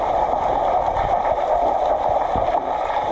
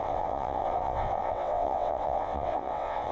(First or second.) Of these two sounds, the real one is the first